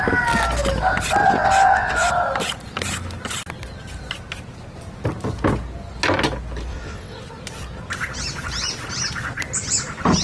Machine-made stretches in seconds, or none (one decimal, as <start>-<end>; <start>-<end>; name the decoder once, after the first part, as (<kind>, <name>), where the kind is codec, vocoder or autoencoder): 1.2-2.1 (vocoder, WaveNeXt); 6.7-7.2